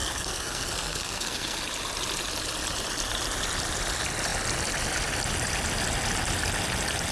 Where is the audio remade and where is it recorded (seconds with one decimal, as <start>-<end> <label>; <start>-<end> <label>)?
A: 0.0-1.6 remade; 1.6-7.1 recorded